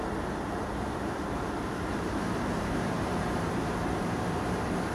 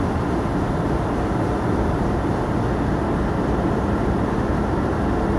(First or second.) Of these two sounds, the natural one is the second